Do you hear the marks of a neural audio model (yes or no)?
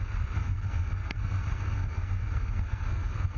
yes